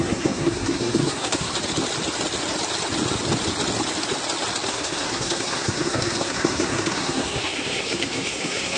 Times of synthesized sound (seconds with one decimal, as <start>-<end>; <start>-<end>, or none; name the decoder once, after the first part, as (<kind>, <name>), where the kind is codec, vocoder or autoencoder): 0.0-1.5 (codec, SNAC); 4.7-8.8